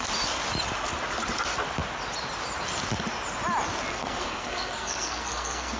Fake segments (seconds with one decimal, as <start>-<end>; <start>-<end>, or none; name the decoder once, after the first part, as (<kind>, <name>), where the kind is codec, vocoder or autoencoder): 3.9-5.8 (codec, SNAC)

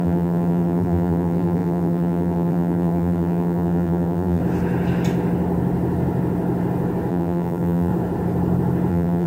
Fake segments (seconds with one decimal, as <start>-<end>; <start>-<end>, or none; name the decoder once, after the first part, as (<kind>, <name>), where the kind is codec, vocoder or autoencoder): 0.0-4.4 (vocoder, BigVGAN v2); 7.1-7.9; 8.9-9.3

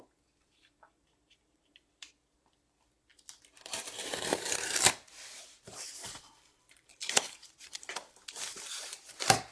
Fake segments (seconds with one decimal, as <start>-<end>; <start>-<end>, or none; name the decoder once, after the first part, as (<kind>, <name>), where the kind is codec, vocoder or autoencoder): 0.0-9.5 (vocoder, BigVGAN v2)